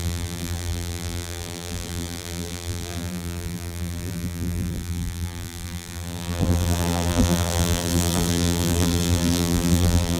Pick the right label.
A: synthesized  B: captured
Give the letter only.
A